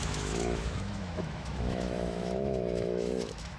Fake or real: fake